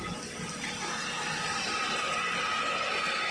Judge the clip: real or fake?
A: real